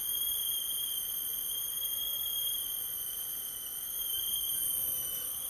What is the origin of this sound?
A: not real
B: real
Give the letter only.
A